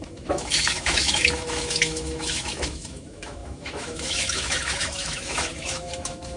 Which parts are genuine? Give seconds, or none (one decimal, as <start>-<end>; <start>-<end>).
none